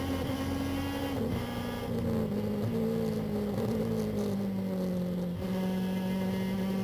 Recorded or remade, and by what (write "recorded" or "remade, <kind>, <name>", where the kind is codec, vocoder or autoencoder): recorded